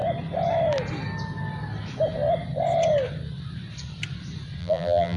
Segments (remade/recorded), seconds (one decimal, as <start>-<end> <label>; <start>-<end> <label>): 0.0-4.6 recorded; 4.6-5.2 remade